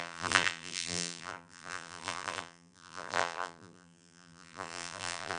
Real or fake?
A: fake